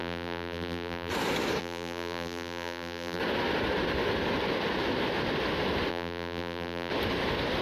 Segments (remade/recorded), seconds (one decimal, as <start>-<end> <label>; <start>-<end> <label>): 0.0-1.1 remade; 1.1-1.6 recorded; 1.6-3.2 remade; 3.2-5.9 recorded; 5.9-6.9 remade; 6.9-7.6 recorded

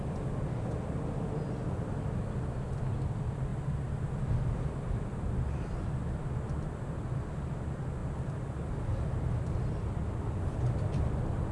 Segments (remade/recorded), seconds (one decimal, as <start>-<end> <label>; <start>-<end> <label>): 0.0-11.5 recorded